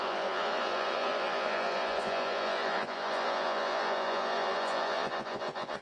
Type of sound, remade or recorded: remade